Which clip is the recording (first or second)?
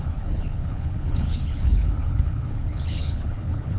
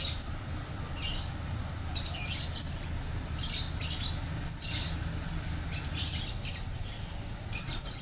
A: second